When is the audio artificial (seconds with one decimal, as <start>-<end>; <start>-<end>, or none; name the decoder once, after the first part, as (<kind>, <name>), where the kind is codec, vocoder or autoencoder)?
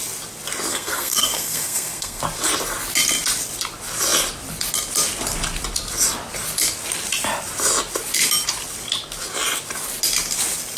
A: 0.7-2.2 (codec, SNAC)